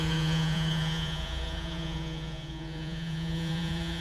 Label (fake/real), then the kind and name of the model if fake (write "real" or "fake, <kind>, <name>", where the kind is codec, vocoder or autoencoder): fake, vocoder, Vocos